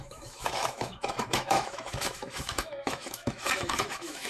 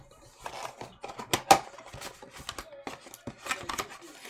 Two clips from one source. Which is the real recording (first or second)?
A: second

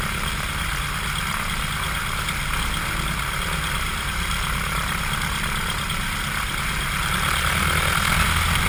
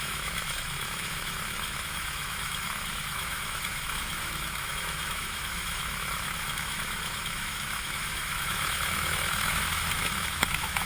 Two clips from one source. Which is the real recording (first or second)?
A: first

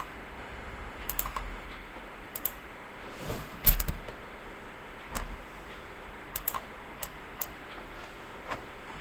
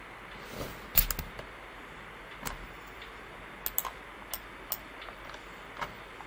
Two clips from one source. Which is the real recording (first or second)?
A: second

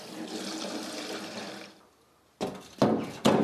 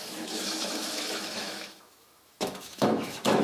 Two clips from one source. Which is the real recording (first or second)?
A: first